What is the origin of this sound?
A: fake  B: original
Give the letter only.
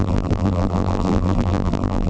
A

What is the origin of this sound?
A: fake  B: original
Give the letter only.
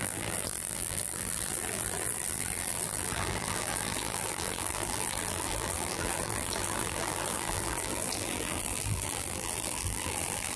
A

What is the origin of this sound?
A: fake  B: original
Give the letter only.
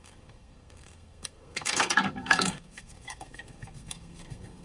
A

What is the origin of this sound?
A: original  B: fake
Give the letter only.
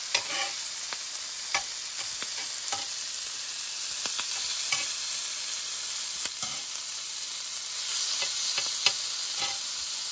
A